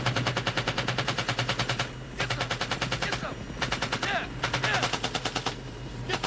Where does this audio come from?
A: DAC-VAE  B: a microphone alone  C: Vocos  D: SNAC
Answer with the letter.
B